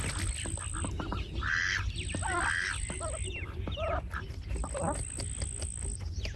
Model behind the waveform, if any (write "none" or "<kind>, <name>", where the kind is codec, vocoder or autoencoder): none